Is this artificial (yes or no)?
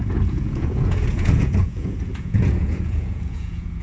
yes